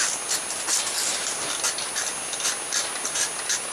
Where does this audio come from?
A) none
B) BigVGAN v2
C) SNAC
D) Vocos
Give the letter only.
A